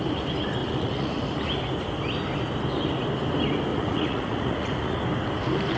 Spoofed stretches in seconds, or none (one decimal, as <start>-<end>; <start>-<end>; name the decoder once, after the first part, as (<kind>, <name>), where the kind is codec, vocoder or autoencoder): 0.6-1.2 (vocoder, Vocos); 3.7-5.0